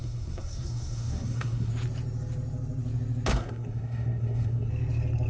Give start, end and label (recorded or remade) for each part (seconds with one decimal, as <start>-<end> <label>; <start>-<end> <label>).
0.0-1.7 remade; 1.7-3.3 recorded; 3.3-4.7 remade; 4.7-5.3 recorded